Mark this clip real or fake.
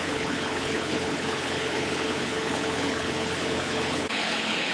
fake